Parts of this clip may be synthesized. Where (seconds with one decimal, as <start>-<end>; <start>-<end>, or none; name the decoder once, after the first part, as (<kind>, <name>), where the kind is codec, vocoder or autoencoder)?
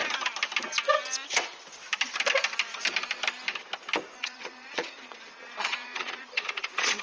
4.2-7.0 (vocoder, Vocos)